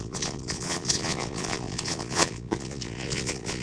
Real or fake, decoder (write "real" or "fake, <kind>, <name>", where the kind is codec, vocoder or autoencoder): fake, vocoder, Vocos